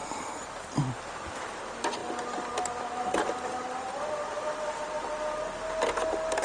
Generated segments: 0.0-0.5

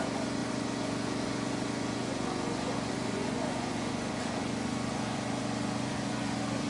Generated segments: 0.0-6.7

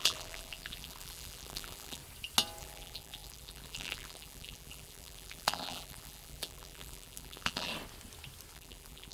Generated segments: 0.0-2.0; 2.6-7.7; 8.5-9.1

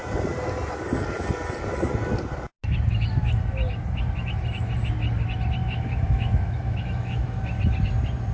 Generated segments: 5.6-7.4